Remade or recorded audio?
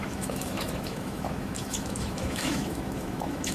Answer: remade